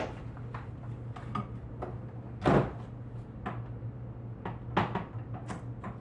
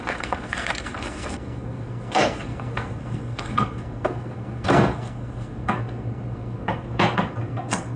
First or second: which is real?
first